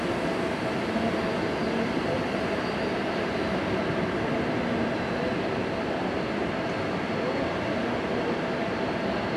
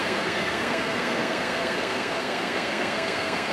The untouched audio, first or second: first